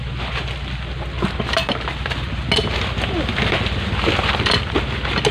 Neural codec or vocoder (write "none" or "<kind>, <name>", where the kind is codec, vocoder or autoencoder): none